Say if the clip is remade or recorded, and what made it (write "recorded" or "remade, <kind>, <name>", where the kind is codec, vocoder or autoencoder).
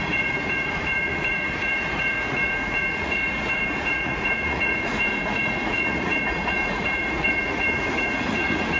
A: remade, vocoder, Vocos